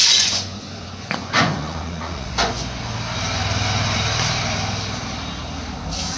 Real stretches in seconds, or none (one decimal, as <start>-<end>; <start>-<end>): 2.8-6.2